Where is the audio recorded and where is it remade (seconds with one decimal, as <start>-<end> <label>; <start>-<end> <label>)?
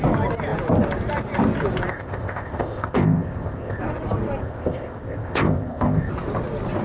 0.0-1.9 recorded; 1.9-3.8 remade; 3.8-4.4 recorded; 4.4-6.1 remade; 6.1-6.8 recorded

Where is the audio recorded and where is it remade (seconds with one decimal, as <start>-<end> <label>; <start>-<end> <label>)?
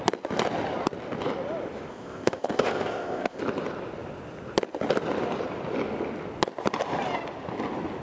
0.0-1.9 recorded; 1.9-3.4 remade; 3.4-8.0 recorded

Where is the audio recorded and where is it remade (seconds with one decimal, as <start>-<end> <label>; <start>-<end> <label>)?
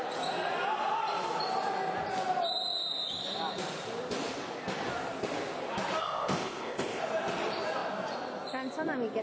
0.0-6.0 recorded; 6.0-7.0 remade; 7.0-9.2 recorded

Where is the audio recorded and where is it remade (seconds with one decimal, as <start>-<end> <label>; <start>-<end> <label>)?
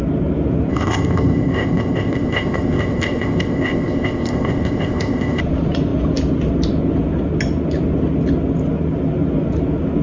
0.0-0.7 recorded; 0.7-5.4 remade; 5.4-10.0 recorded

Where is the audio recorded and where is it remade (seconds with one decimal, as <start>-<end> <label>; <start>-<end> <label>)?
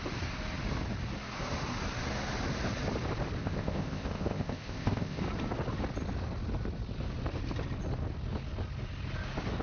0.0-3.4 recorded; 3.4-5.2 remade; 5.2-9.6 recorded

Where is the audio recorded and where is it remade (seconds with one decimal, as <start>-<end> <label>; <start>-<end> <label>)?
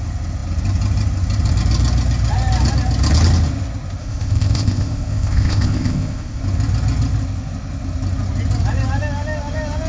0.0-4.0 recorded; 4.0-6.4 remade; 6.4-9.9 recorded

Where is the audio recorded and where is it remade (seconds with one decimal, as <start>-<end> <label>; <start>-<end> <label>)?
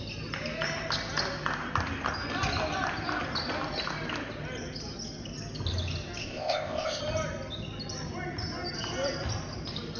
0.0-6.2 recorded; 6.2-7.0 remade; 7.0-10.0 recorded